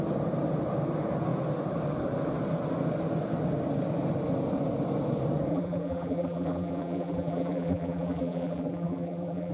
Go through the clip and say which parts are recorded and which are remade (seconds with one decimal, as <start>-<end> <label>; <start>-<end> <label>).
0.0-5.5 recorded; 5.5-9.5 remade